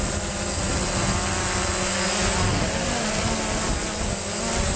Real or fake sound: real